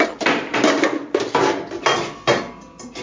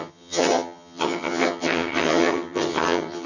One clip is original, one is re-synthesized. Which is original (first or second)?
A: first